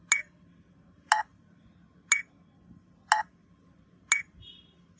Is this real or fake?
real